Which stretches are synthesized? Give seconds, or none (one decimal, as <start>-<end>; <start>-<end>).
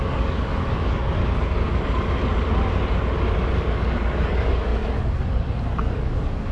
0.0-1.2; 3.5-6.5